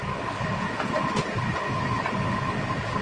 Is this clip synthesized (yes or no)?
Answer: no